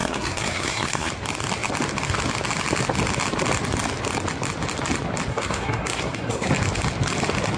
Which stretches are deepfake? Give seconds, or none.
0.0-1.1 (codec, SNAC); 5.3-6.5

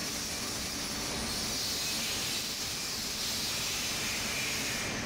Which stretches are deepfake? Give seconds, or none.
0.0-1.1 (vocoder, BigVGAN v2); 2.4-3.2

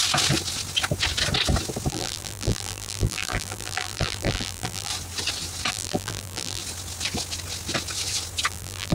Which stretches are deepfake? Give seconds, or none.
1.9-4.9 (vocoder, BigVGAN v2); 5.7-6.6; 8.5-8.9